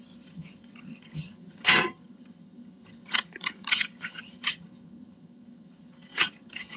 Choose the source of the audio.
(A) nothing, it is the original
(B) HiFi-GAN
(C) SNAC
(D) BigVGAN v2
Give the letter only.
B